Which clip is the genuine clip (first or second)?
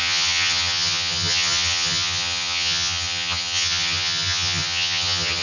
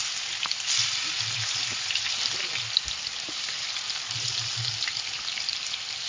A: second